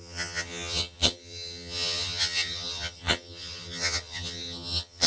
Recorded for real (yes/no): no